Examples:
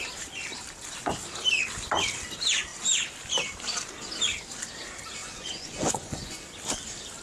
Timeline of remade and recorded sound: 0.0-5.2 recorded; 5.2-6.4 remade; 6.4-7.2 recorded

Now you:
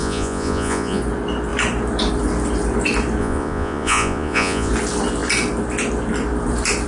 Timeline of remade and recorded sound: 0.0-1.0 remade; 1.0-3.2 recorded; 3.2-4.7 remade; 4.7-6.9 recorded

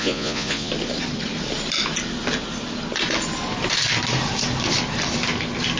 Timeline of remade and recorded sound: 0.0-0.7 remade; 0.7-5.8 recorded